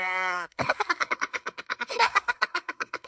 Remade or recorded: remade